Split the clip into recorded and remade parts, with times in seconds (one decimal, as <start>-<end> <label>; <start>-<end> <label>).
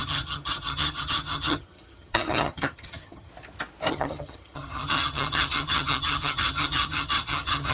0.0-3.3 remade; 3.3-3.9 recorded; 3.9-7.7 remade